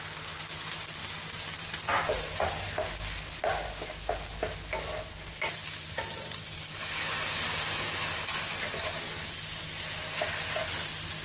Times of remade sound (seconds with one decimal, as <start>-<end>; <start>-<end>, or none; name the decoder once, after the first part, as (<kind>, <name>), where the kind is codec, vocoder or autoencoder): 1.0-2.0 (vocoder, BigVGAN v2)